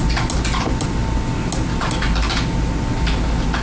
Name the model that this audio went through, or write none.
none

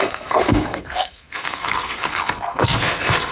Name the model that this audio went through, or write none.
codec, SNAC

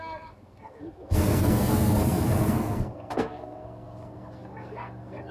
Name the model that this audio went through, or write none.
codec, SNAC